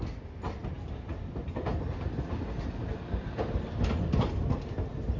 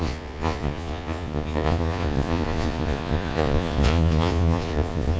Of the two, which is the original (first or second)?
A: first